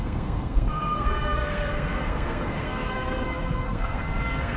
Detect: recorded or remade remade